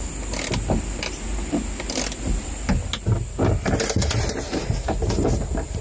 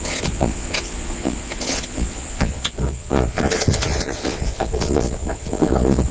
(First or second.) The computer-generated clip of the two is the second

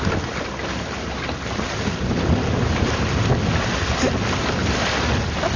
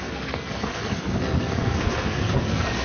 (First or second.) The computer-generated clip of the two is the second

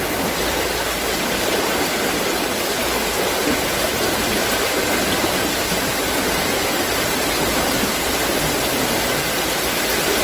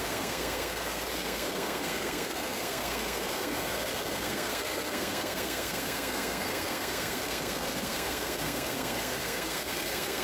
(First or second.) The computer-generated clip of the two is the second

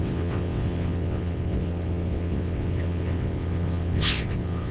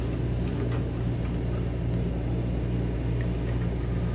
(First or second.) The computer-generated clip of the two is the first